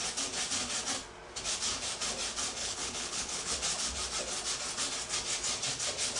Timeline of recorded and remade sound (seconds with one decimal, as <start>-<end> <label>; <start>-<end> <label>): 0.0-2.6 recorded; 2.6-3.5 remade; 3.5-6.2 recorded